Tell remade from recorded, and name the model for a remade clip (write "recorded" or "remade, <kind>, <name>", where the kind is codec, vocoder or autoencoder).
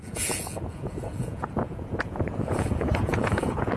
remade, vocoder, Vocos